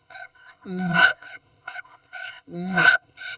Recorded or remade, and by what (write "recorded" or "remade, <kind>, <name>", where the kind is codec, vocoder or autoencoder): remade, codec, ZipCodec